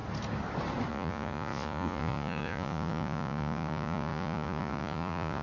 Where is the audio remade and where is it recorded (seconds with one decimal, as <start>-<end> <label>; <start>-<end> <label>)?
0.0-0.9 recorded; 0.9-5.4 remade